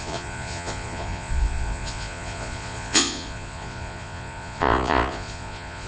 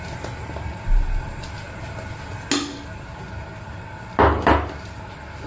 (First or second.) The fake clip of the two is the first